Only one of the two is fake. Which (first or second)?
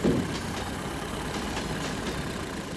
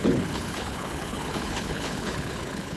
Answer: second